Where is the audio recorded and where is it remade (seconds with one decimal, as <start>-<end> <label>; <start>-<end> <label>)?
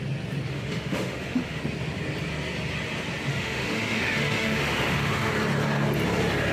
0.0-0.5 recorded; 0.5-1.6 remade; 1.6-3.3 recorded; 3.3-5.3 remade; 5.3-6.5 recorded